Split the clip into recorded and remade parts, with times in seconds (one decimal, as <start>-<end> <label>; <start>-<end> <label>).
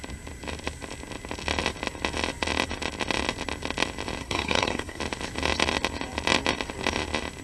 0.0-4.2 recorded; 4.2-5.0 remade; 5.0-7.4 recorded